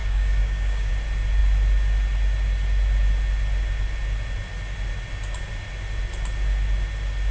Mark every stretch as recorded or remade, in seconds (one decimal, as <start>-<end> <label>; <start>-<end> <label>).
0.0-0.9 remade; 0.9-7.3 recorded